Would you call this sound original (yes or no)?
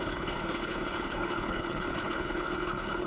no